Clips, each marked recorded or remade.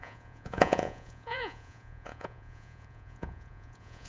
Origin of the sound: remade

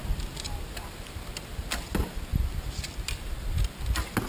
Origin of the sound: recorded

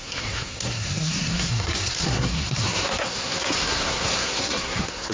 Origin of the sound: remade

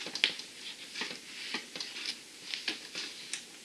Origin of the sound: recorded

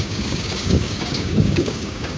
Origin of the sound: remade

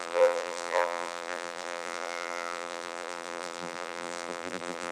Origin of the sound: remade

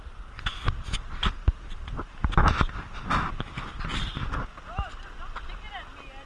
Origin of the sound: recorded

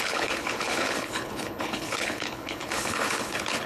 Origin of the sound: remade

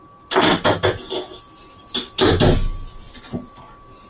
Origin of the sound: recorded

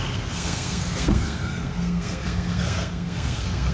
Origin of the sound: remade